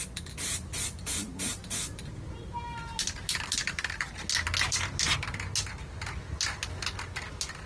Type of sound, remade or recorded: recorded